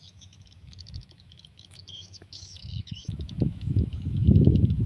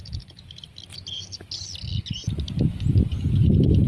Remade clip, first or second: first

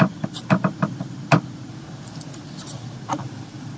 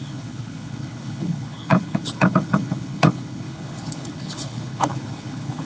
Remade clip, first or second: second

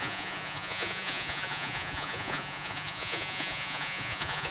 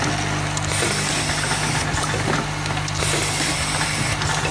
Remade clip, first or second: first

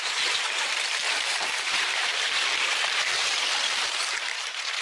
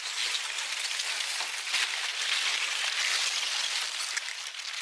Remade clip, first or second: first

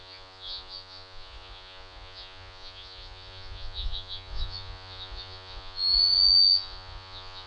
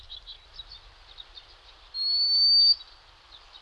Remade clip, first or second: first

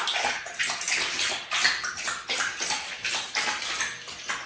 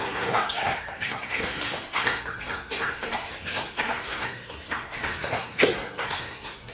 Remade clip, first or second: second